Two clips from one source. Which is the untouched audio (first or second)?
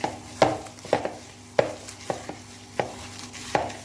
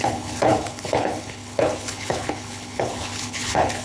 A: first